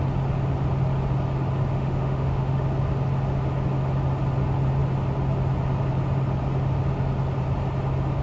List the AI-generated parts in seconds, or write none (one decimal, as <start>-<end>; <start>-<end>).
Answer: 1.7-2.6